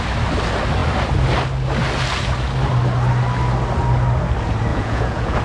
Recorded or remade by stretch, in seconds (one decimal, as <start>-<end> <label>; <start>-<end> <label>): 0.0-4.7 recorded; 4.7-5.4 remade